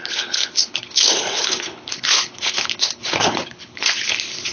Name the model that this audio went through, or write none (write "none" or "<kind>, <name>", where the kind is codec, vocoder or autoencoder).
codec, HILCodec